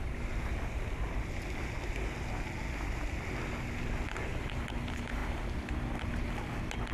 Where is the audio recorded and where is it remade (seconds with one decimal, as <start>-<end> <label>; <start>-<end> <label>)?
0.0-6.9 recorded

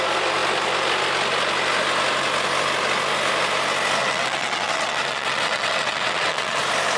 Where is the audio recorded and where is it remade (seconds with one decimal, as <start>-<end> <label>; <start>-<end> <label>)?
0.0-4.0 recorded; 4.0-6.6 remade; 6.6-7.0 recorded

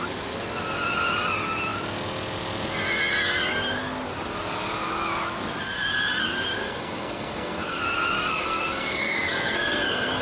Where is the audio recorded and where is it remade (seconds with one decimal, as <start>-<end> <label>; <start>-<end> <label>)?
0.0-6.6 recorded; 6.6-7.8 remade; 7.8-8.3 recorded; 8.3-10.2 remade

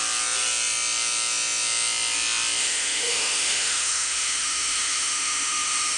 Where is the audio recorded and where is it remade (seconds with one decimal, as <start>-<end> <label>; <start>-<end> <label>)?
0.0-2.6 recorded; 2.6-6.0 remade

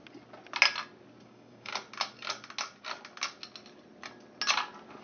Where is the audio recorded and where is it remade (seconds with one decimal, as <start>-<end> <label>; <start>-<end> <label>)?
0.0-1.2 recorded; 1.2-1.7 remade; 1.7-5.0 recorded

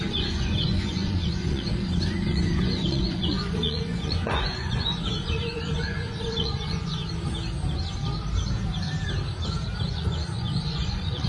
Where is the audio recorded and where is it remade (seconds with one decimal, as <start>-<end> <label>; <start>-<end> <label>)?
0.0-7.0 remade; 7.0-9.9 recorded; 9.9-11.3 remade

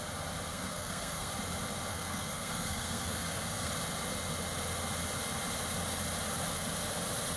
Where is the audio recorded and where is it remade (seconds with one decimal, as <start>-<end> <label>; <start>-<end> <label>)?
0.0-0.5 recorded; 0.5-1.3 remade; 1.3-1.9 recorded; 1.9-3.7 remade; 3.7-7.4 recorded

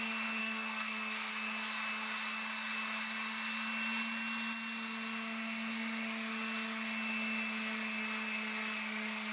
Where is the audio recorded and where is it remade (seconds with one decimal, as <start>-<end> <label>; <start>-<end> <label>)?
0.0-0.4 recorded; 0.4-1.3 remade; 1.3-9.3 recorded